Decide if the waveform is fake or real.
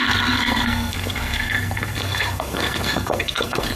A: fake